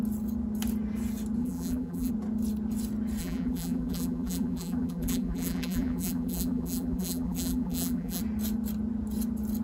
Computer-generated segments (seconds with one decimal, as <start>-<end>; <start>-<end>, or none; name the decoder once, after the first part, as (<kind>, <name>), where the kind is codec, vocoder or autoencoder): 1.4-2.1 (vocoder, BigVGAN v2); 3.2-8.2